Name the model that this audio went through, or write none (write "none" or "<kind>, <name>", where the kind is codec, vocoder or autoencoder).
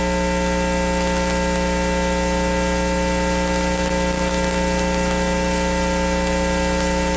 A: none